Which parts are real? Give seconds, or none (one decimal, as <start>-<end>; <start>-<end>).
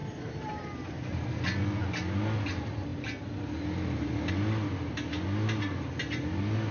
0.0-6.7